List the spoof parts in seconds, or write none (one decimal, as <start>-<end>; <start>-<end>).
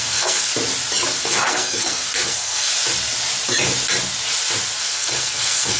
0.0-0.5; 1.2-2.7; 4.8-5.8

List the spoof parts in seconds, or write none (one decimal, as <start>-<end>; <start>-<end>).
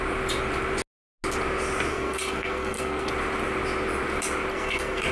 1.9-3.1; 4.5-5.1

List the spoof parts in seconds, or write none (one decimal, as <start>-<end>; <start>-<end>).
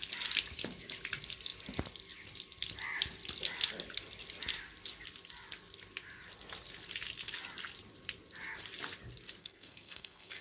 9.4-10.4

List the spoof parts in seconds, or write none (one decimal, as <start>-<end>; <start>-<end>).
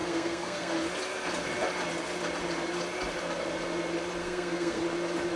0.0-0.7; 4.2-4.8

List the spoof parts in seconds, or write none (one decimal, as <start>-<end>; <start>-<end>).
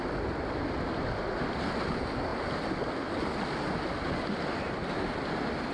none